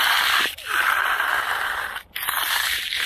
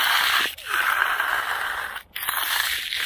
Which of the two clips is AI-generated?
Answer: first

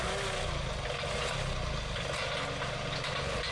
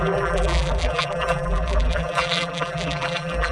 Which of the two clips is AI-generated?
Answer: second